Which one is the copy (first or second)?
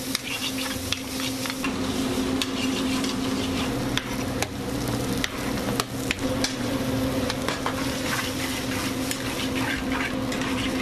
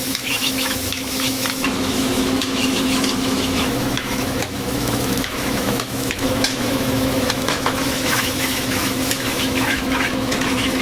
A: second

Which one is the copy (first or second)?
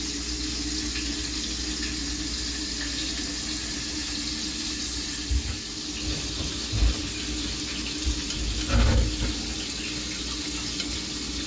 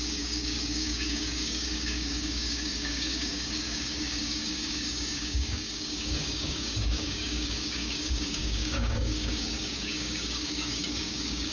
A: second